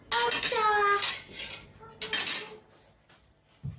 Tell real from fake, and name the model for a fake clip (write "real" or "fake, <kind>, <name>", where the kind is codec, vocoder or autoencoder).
real